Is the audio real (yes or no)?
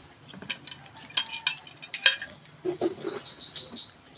yes